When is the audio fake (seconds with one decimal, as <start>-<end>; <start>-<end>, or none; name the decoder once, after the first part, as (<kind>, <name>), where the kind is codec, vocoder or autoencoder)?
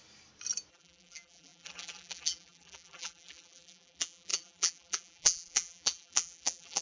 0.7-6.8 (vocoder, BigVGAN v2)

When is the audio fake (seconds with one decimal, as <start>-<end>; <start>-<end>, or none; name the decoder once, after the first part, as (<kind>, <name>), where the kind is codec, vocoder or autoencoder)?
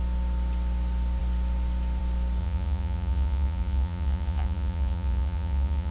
2.4-5.9 (vocoder, Vocos)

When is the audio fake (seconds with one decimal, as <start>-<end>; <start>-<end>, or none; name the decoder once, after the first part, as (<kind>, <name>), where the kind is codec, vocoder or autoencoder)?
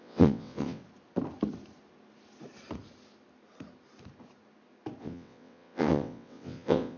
0.0-0.8 (vocoder, WaveNeXt); 5.0-7.0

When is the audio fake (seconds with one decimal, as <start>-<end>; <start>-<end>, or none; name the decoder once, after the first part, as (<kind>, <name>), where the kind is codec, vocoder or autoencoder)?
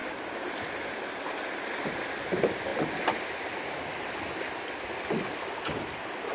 none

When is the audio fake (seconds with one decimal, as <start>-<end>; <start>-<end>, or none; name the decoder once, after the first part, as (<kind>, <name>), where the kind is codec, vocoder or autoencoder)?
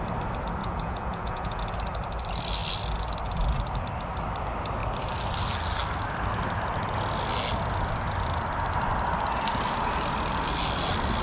0.6-1.6 (vocoder, Vocos)